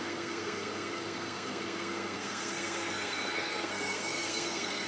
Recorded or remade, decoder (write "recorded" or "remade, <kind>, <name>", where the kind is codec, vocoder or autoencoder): remade, codec, SNAC